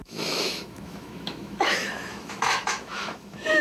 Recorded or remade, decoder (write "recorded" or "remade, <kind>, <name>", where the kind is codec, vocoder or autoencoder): remade, autoencoder, DAC-VAE